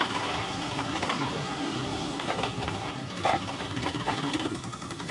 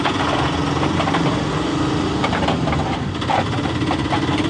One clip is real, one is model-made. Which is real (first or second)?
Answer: second